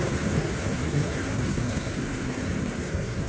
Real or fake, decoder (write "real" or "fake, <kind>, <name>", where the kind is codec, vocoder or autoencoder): fake, codec, SNAC